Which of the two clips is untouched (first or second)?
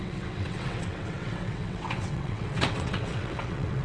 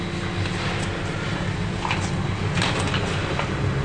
second